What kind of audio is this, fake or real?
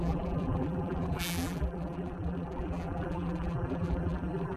fake